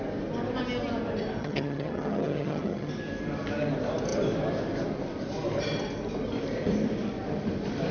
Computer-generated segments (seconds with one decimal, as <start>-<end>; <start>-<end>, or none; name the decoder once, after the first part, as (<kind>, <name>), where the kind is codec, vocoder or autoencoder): 1.4-2.9 (vocoder, HiFi-GAN)